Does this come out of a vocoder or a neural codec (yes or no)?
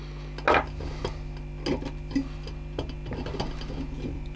no